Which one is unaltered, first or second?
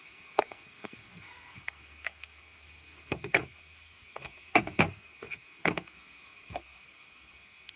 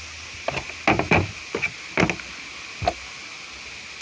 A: second